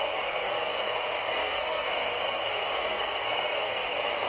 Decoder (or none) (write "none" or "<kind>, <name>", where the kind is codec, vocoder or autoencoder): codec, SNAC